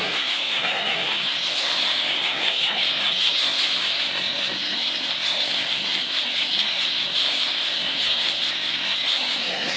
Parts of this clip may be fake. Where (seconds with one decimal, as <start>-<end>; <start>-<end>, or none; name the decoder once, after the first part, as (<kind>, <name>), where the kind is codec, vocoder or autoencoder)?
0.0-9.8 (codec, SNAC)